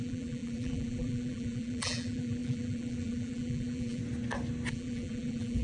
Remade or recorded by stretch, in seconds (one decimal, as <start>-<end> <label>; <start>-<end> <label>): 0.0-4.0 remade; 4.0-4.7 recorded; 4.7-5.6 remade